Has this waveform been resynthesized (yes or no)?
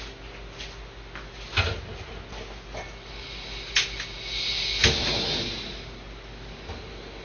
no